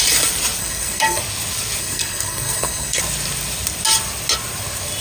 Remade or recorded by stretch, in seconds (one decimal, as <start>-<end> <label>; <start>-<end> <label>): 0.0-0.6 recorded; 0.6-1.2 remade; 1.2-1.8 recorded; 1.8-3.0 remade; 3.0-5.0 recorded